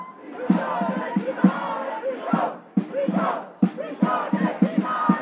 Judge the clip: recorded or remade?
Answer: recorded